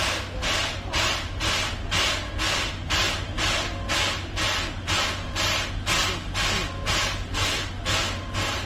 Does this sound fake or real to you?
real